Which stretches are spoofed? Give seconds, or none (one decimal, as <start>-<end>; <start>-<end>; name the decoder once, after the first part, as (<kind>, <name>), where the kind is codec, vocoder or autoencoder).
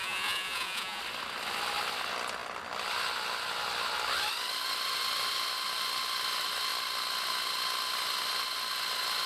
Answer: 0.0-1.0 (vocoder, Vocos)